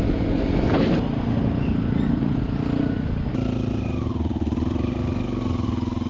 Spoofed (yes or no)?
no